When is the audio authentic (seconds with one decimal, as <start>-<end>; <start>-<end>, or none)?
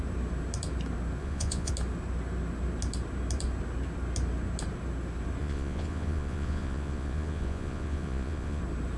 0.0-1.2; 1.7-5.4; 8.6-9.0